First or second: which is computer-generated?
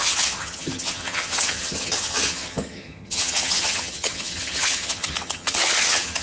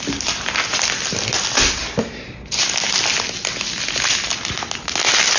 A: first